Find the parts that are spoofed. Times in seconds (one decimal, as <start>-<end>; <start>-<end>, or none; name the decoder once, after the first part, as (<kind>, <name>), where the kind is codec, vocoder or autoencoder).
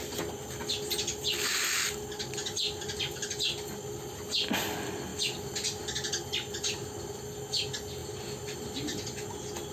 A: none